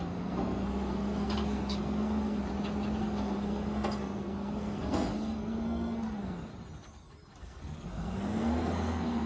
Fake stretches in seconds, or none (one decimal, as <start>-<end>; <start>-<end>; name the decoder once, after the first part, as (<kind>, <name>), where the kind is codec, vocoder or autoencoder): 0.0-2.4 (codec, SNAC); 3.0-6.5; 7.4-9.3